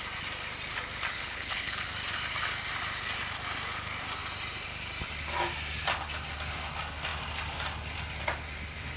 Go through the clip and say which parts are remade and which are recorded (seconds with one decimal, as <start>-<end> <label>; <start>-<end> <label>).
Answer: 0.0-1.1 recorded; 1.1-1.9 remade; 1.9-9.0 recorded